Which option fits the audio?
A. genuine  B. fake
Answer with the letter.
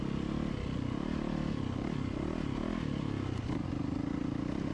A